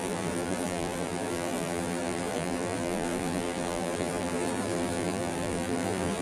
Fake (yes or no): yes